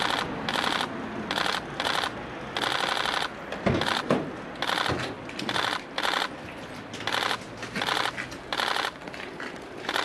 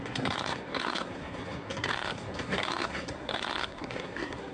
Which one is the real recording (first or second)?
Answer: first